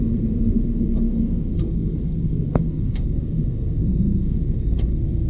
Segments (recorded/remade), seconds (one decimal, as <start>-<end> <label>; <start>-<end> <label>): 0.0-5.3 remade